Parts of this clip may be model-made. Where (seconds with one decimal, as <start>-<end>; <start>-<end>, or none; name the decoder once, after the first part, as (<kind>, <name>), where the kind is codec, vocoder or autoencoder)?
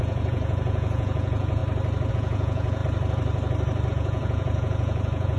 0.0-1.6 (vocoder, Vocos); 2.1-2.8; 3.9-5.4